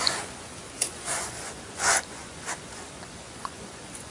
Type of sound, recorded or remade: remade